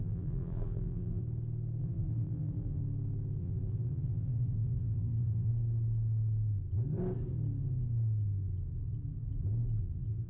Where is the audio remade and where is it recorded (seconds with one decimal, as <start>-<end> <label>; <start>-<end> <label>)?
0.0-1.2 remade; 1.2-1.8 recorded; 1.8-2.8 remade; 2.8-3.4 recorded; 3.4-5.5 remade; 5.5-9.8 recorded; 9.8-10.3 remade